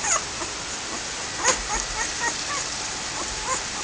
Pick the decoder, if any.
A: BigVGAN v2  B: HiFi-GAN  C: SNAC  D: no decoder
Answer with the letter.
A